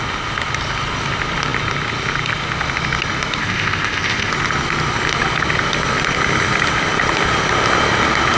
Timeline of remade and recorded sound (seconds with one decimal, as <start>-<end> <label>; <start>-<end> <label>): 0.0-3.4 recorded; 3.4-4.3 remade; 4.3-8.4 recorded